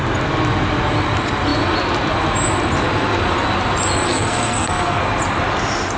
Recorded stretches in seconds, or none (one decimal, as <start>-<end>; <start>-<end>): 0.0-4.1; 5.0-6.0